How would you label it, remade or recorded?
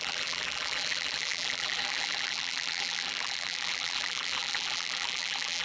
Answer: remade